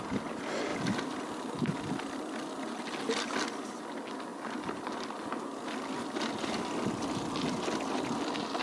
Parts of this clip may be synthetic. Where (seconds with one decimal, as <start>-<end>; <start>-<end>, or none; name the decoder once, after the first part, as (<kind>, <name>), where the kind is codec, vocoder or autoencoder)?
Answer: none